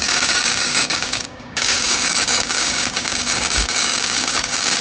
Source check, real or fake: fake